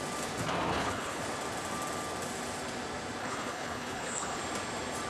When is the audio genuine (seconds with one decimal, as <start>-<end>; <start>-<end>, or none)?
0.0-0.7; 1.2-3.2; 4.4-5.1